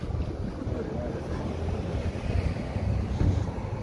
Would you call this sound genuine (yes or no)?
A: yes